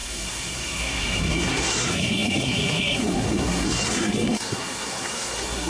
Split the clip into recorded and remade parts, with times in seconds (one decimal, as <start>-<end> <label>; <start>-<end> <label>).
0.0-5.7 remade